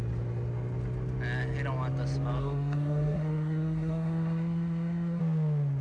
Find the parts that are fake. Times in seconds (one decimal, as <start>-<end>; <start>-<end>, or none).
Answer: 2.4-5.2